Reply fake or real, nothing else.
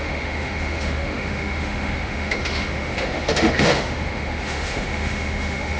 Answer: fake